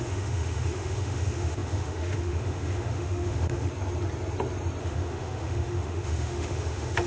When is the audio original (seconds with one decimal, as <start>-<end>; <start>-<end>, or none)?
3.7-4.8